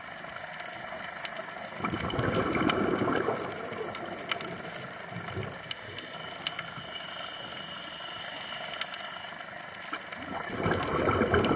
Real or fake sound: real